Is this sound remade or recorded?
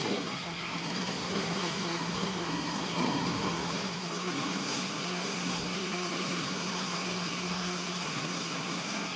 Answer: remade